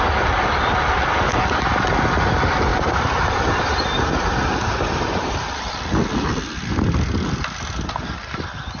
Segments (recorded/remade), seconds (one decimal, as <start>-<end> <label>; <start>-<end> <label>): 0.0-2.7 recorded; 2.7-5.7 remade; 5.7-8.8 recorded